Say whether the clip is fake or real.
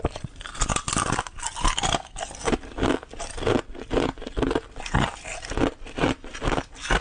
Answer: real